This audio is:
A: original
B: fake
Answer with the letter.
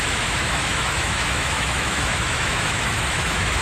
B